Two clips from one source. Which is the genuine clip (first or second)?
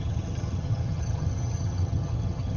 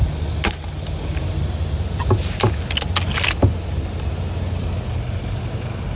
second